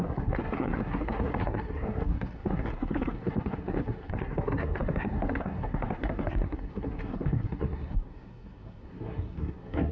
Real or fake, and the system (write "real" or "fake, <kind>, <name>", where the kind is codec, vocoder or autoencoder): fake, codec, SNAC